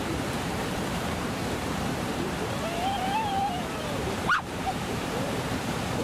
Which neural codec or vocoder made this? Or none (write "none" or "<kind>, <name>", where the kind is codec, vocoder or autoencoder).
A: vocoder, BigVGAN v2